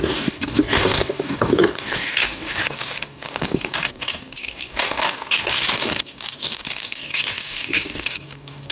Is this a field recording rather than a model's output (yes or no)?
no